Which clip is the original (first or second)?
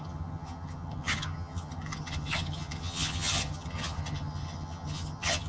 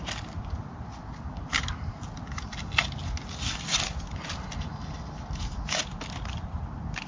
second